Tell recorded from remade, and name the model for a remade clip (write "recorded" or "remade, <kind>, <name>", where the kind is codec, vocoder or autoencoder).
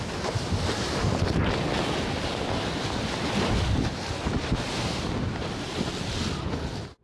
recorded